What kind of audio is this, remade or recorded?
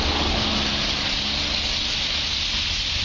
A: recorded